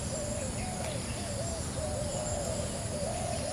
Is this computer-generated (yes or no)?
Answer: no